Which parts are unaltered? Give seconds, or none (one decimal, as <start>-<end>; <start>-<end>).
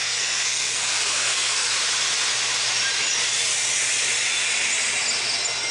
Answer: 1.8-5.7